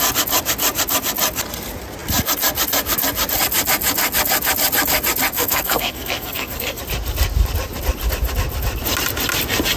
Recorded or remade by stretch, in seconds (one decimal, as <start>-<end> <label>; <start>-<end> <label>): 0.0-5.3 recorded; 5.3-6.8 remade; 6.8-9.8 recorded

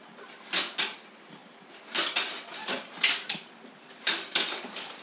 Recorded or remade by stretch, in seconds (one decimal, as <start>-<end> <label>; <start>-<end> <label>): 0.0-5.0 recorded

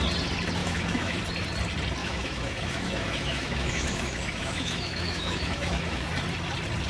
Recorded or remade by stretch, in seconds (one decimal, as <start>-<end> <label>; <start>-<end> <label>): 0.0-0.6 recorded; 0.6-1.2 remade; 1.2-2.0 recorded; 2.0-6.1 remade; 6.1-6.9 recorded